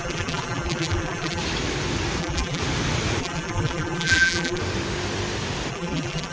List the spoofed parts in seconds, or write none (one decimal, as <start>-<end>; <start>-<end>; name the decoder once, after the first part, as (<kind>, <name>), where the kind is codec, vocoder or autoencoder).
0.0-1.4 (vocoder, BigVGAN v2); 2.2-2.6; 3.2-4.6; 5.7-6.3